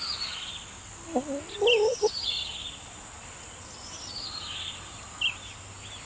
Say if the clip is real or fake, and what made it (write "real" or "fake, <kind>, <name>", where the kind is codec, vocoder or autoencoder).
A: real